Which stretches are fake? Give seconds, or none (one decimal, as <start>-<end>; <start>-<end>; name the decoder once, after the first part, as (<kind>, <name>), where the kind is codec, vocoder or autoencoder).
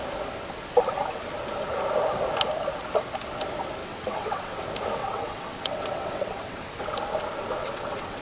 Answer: 3.8-4.6 (vocoder, WaveNeXt); 5.0-6.7; 7.6-8.2